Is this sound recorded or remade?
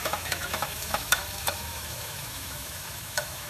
remade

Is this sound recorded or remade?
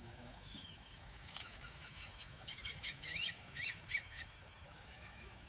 remade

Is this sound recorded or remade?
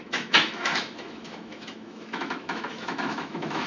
remade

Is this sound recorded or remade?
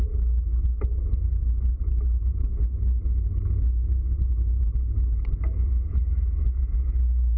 recorded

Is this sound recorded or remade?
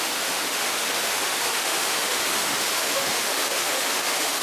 remade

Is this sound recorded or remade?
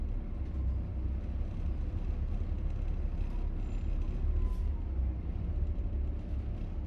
recorded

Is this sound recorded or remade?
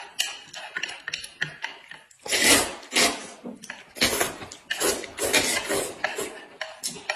recorded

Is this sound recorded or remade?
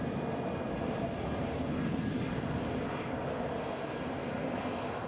recorded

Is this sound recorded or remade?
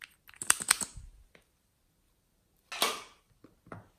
recorded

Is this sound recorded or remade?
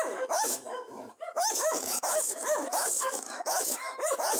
remade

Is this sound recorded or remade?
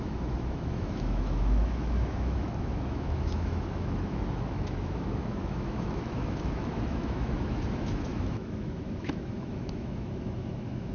remade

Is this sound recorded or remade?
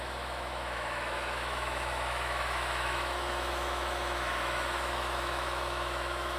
remade